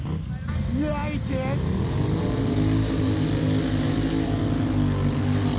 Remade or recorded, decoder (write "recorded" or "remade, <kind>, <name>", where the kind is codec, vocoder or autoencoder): recorded